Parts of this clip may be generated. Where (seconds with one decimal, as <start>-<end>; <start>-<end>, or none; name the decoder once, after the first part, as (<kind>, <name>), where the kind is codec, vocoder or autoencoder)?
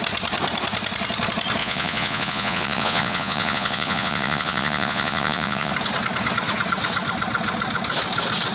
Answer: 1.6-5.7 (vocoder, Vocos)